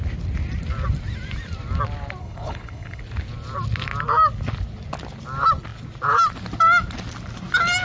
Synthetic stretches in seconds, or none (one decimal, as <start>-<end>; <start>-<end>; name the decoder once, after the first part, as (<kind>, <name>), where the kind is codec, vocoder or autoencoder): 2.2-3.0 (codec, HILCodec)

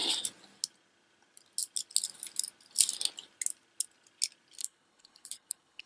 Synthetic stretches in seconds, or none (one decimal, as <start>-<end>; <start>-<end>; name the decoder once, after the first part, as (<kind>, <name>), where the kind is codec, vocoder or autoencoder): 4.6-5.9 (codec, HILCodec)